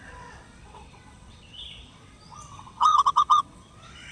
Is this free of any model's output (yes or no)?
no